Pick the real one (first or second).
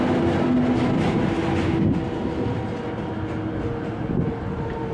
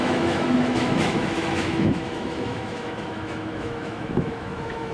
first